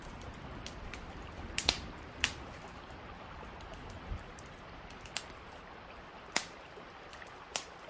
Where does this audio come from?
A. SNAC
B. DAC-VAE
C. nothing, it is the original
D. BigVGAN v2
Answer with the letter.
C